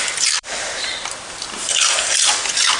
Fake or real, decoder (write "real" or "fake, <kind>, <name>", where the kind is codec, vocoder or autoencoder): fake, vocoder, BigVGAN v2